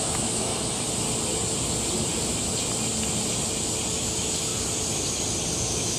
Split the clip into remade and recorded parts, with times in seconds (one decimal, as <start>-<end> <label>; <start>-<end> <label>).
0.0-0.5 remade; 0.5-3.9 recorded; 3.9-4.5 remade; 4.5-5.6 recorded; 5.6-6.0 remade